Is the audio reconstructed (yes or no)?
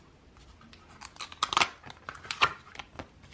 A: no